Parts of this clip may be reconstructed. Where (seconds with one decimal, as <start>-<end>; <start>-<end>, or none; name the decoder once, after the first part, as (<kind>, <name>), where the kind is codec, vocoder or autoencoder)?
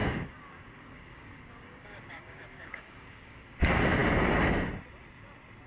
0.0-3.4 (codec, DAC)